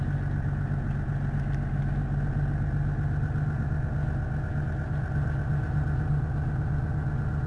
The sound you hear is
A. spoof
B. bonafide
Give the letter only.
B